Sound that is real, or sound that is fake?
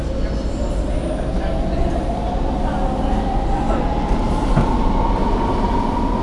real